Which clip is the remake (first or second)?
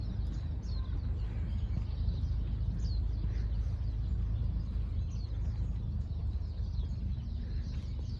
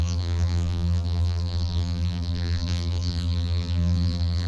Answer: second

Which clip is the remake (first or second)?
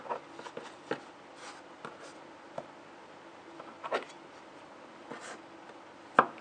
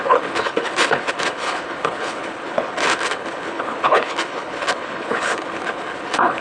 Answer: second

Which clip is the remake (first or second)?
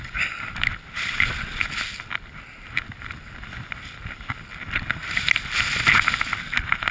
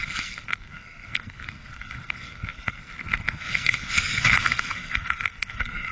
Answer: second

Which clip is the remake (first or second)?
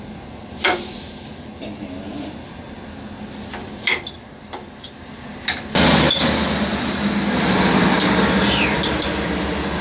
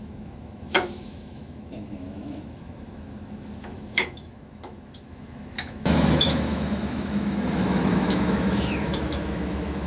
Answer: second